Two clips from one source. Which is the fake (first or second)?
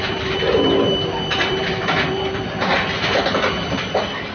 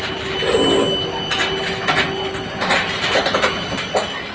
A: first